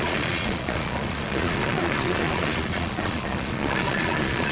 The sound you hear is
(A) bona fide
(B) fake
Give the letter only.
B